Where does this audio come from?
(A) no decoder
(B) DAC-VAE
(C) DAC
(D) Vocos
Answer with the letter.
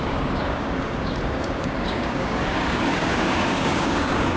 C